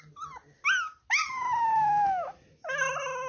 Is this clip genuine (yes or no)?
yes